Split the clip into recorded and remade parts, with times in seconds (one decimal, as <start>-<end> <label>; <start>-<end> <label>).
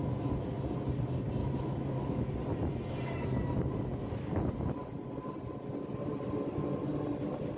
0.0-1.4 recorded; 1.4-2.3 remade; 2.3-7.6 recorded